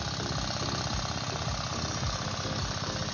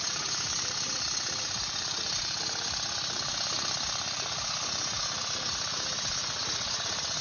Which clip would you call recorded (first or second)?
first